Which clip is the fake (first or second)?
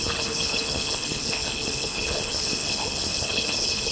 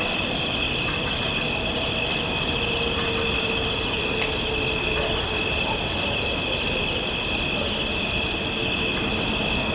first